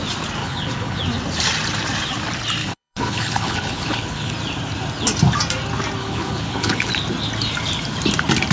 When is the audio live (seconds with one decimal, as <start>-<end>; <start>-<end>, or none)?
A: 0.0-0.4; 1.0-2.6; 4.3-6.0; 6.9-8.5